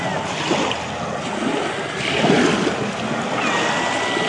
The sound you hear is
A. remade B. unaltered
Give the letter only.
B